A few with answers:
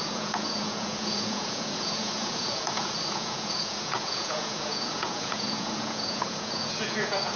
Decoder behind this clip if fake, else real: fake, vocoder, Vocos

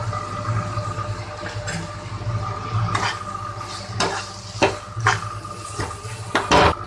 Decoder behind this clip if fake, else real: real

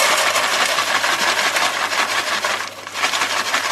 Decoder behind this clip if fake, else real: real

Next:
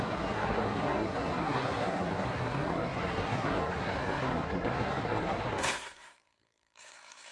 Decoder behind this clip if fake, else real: fake, codec, SNAC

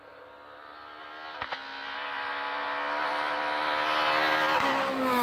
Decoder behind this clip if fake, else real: real